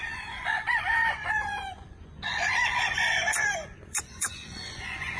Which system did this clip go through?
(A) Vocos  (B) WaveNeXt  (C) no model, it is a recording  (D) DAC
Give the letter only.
A